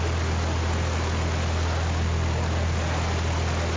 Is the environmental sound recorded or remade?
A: recorded